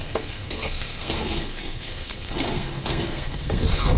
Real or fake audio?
fake